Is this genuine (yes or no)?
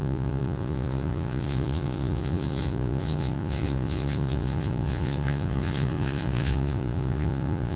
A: no